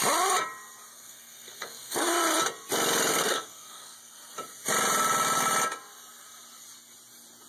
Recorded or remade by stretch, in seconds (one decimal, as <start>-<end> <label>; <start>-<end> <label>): 0.0-0.9 recorded; 0.9-2.1 remade; 2.1-3.1 recorded; 3.1-4.3 remade; 4.3-7.5 recorded